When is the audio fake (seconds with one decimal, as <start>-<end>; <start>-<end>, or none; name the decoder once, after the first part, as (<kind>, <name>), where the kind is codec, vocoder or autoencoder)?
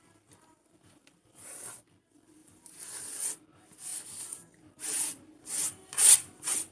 none